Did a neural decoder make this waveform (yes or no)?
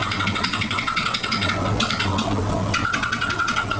yes